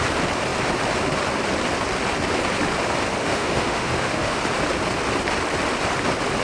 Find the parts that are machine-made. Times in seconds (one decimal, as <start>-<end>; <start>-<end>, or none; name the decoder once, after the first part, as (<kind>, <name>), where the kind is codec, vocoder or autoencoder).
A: 3.2-4.4 (autoencoder, DAC-VAE)